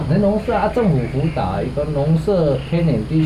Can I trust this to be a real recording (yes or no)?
yes